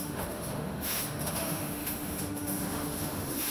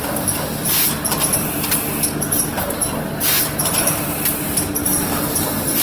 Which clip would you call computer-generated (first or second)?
first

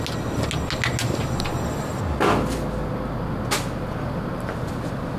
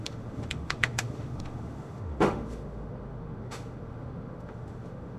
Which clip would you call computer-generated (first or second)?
second